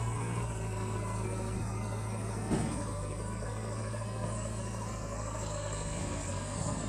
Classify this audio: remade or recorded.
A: remade